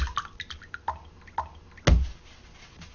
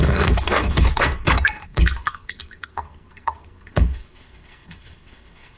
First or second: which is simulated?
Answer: second